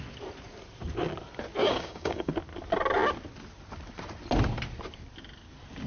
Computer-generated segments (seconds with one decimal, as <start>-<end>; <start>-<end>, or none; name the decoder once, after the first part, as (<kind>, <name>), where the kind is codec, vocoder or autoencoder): 1.6-2.3 (codec, DAC)